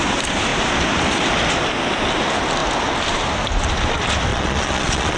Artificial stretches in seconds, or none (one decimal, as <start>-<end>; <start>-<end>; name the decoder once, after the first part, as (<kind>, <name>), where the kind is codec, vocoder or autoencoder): 4.3-5.2 (vocoder, Vocos)